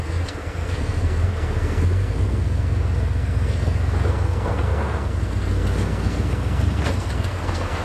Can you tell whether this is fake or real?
fake